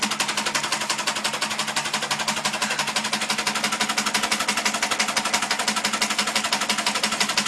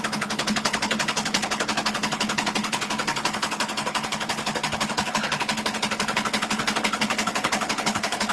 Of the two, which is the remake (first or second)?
second